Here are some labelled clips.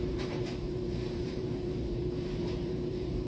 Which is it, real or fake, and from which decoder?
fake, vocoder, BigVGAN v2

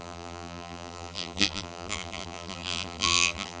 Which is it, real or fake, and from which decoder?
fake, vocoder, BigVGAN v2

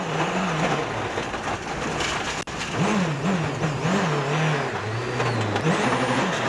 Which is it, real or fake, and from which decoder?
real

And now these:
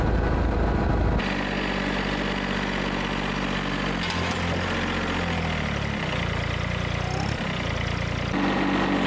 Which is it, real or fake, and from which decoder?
real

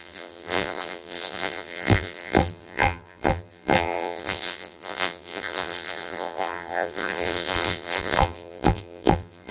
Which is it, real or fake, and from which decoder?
fake, vocoder, BigVGAN v2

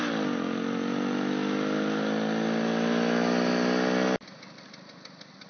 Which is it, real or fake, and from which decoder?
real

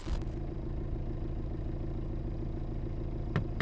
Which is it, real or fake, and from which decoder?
fake, vocoder, BigVGAN v2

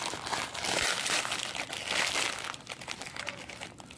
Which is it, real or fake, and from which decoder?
real